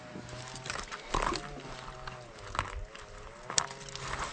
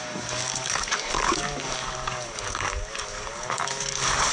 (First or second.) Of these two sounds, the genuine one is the first